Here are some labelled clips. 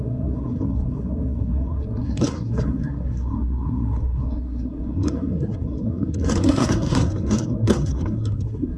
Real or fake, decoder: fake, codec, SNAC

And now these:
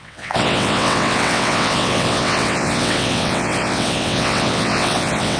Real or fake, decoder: fake, vocoder, WaveNeXt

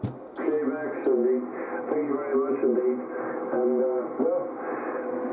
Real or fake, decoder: real